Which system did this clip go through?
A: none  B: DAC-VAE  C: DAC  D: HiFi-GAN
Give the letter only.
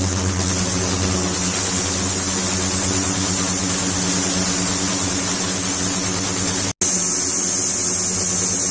A